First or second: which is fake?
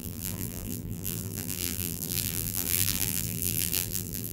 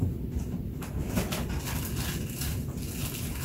first